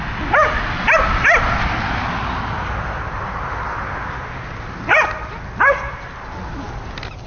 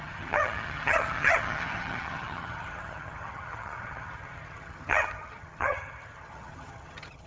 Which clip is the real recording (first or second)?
first